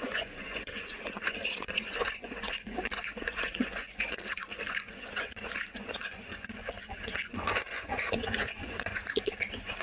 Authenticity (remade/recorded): remade